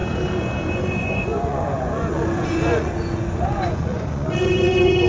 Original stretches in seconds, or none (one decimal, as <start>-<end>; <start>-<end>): 0.0-0.7